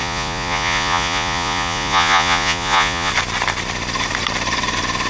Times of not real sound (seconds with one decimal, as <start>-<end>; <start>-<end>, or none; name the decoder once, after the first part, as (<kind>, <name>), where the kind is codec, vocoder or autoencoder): 0.0-3.1 (vocoder, Vocos)

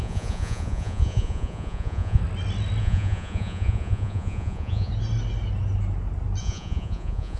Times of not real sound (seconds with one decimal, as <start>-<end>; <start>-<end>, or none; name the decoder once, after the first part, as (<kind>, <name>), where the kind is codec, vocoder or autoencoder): 0.0-2.2 (vocoder, Vocos); 2.8-4.9; 6.4-7.4

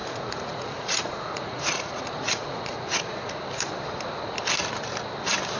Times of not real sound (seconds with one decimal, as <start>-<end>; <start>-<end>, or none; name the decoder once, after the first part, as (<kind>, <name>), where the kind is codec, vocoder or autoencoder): 0.0-3.4 (vocoder, Vocos)

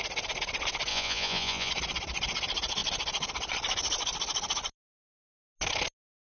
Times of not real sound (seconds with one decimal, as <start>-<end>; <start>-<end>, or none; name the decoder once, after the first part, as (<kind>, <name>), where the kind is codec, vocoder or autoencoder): 0.9-1.7 (vocoder, Vocos)

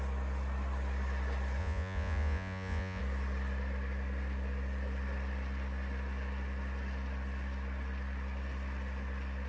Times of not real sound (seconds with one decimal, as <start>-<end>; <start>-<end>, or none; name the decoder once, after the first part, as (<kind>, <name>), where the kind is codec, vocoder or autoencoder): 1.6-3.0 (vocoder, Vocos)